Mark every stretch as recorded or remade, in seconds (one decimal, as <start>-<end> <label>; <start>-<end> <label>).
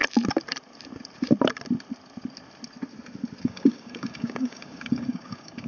0.0-3.4 recorded; 3.4-5.7 remade